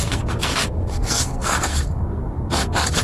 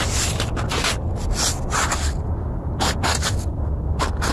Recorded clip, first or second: second